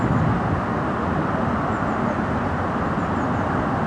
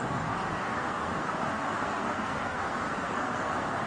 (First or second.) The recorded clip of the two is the first